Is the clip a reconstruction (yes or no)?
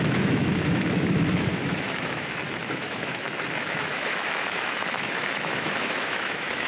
yes